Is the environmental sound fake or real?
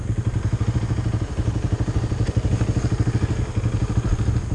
real